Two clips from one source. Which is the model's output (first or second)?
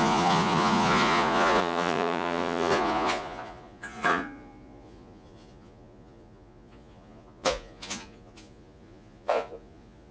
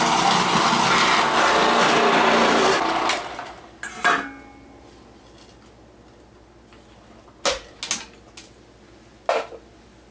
first